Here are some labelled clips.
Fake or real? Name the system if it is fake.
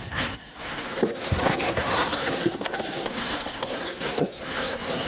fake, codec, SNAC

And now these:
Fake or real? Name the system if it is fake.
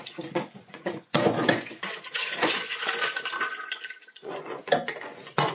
fake, vocoder, Vocos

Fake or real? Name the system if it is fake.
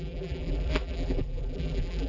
fake, vocoder, BigVGAN v2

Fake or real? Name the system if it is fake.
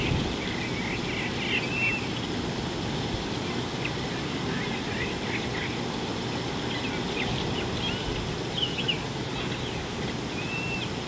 real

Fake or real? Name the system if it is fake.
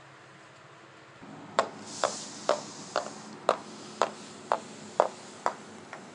real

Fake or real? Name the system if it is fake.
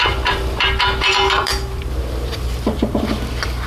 fake, vocoder, BigVGAN v2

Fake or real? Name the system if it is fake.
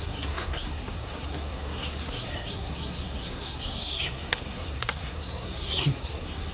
fake, codec, SNAC